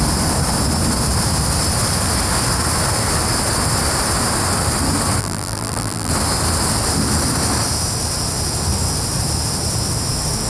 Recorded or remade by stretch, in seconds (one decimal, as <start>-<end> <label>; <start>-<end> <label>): 0.0-5.2 recorded; 5.2-6.1 remade; 6.1-10.5 recorded